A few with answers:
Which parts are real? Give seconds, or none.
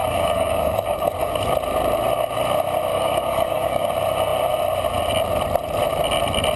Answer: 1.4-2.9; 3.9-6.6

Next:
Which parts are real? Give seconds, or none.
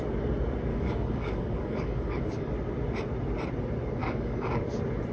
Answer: 0.0-0.7; 2.5-4.0; 4.6-5.1